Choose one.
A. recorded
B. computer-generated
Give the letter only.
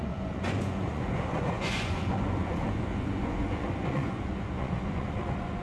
B